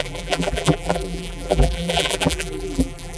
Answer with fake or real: fake